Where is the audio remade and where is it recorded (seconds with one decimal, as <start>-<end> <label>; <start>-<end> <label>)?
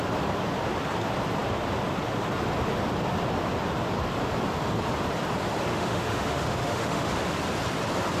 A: 0.0-5.7 recorded; 5.7-7.1 remade; 7.1-8.2 recorded